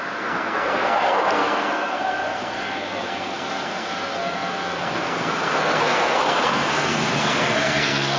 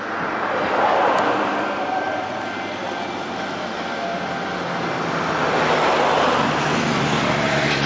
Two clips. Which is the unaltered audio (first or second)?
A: second